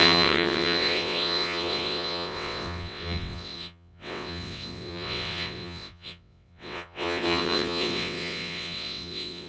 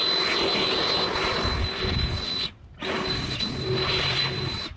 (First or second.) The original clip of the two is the second